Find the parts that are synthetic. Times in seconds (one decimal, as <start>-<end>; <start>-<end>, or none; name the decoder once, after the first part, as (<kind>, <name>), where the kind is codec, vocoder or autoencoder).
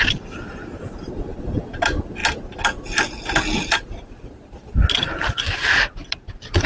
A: none